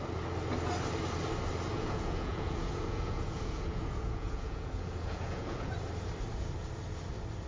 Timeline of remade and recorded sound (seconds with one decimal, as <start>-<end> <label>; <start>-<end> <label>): 0.0-1.7 recorded; 1.7-5.7 remade; 5.7-7.5 recorded